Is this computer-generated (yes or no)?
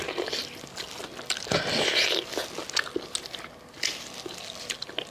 no